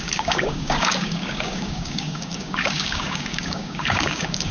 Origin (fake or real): fake